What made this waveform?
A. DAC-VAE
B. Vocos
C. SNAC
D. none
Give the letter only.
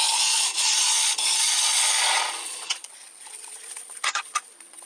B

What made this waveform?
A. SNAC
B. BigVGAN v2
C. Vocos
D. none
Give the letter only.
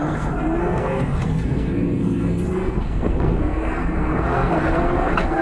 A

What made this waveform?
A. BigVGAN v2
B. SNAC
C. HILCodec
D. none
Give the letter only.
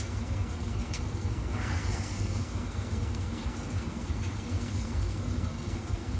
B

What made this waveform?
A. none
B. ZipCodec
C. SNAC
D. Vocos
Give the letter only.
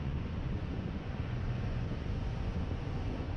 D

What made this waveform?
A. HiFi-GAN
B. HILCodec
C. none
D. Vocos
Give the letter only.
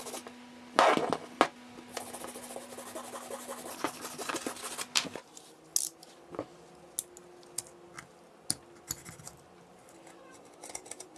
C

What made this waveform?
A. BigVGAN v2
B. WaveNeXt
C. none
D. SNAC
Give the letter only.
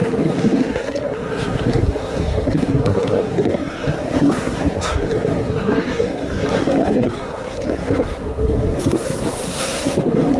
D